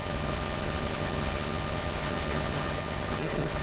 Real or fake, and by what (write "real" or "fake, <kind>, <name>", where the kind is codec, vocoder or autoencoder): fake, vocoder, HiFi-GAN